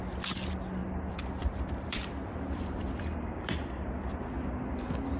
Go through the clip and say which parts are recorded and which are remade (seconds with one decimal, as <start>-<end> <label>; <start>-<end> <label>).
0.0-0.8 recorded; 0.8-3.9 remade; 3.9-5.2 recorded